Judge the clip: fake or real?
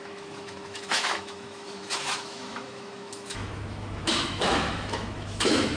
fake